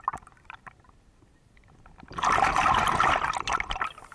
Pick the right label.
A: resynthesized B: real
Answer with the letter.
B